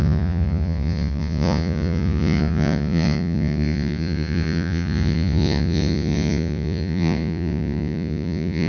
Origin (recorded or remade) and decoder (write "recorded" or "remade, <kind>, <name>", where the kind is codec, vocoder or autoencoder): remade, vocoder, Vocos